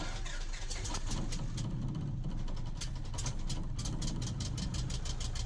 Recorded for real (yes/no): yes